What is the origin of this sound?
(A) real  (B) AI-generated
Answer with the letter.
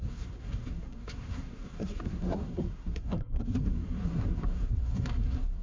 B